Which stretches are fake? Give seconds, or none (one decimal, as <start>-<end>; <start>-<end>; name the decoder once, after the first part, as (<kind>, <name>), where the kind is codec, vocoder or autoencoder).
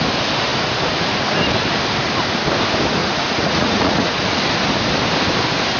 3.0-4.2 (vocoder, Vocos)